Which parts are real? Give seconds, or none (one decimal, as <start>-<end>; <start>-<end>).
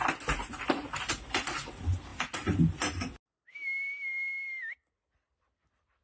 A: 0.0-6.0